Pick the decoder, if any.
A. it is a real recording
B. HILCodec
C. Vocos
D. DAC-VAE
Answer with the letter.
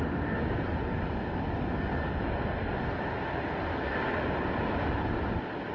A